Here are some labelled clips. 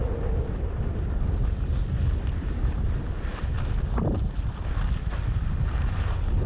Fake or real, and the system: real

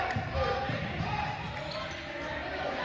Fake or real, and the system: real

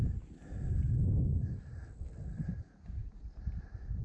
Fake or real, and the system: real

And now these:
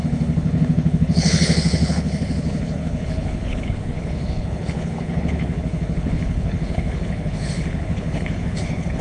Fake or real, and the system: fake, codec, HILCodec